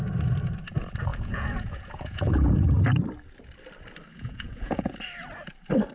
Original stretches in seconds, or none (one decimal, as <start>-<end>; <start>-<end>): 0.0-1.1; 2.8-4.1; 5.0-5.9